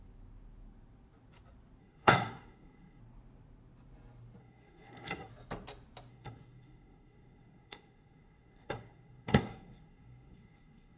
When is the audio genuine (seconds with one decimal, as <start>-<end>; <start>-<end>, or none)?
0.0-1.8; 3.0-4.4; 5.3-6.1